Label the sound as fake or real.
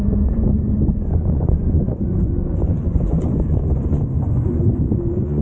fake